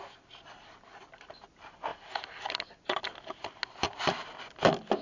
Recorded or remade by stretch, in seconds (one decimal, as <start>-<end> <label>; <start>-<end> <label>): 0.0-5.0 recorded